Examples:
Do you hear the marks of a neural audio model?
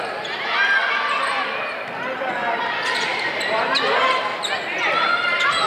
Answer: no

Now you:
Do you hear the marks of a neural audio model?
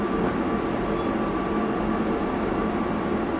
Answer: no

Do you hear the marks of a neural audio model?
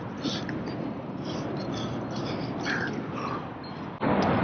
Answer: no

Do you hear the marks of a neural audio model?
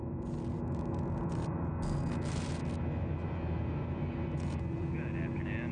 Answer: no